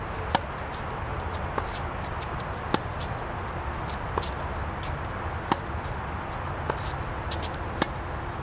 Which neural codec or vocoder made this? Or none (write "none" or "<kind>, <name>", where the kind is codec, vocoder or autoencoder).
none